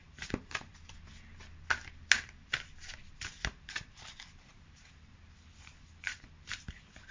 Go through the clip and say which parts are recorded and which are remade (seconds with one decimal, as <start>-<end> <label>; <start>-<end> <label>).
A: 0.0-0.7 remade; 0.7-3.1 recorded; 3.1-7.1 remade